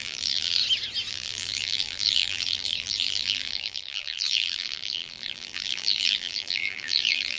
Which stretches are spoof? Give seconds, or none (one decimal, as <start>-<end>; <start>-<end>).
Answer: 0.0-0.6; 1.1-7.4